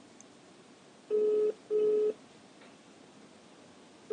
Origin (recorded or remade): recorded